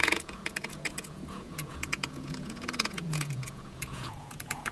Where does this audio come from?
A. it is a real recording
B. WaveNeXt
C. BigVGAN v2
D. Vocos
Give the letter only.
D